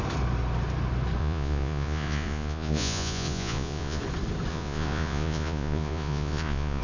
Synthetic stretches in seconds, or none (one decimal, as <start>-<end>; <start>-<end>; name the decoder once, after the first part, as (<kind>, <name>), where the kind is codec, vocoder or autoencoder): 1.2-4.0 (vocoder, Vocos); 4.5-6.8